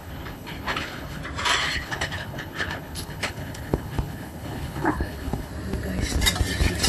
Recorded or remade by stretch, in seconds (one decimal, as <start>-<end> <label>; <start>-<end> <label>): 0.0-1.2 remade; 1.2-1.6 recorded; 1.6-5.5 remade; 5.5-6.9 recorded